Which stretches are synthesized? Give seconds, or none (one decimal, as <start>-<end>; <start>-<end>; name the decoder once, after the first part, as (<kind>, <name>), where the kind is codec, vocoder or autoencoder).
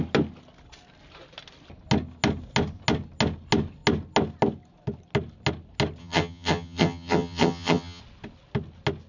6.0-8.0 (vocoder, HiFi-GAN)